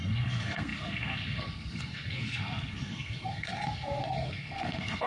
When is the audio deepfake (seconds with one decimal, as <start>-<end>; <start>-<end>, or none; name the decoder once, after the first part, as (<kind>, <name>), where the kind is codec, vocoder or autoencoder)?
0.0-5.1 (codec, SNAC)